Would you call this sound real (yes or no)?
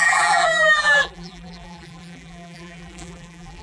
no